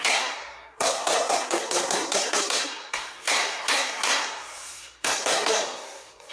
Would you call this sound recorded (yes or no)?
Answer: no